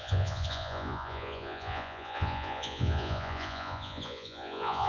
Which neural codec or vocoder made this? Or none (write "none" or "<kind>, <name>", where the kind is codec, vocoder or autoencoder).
vocoder, Vocos